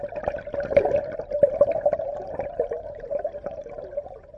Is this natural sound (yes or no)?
no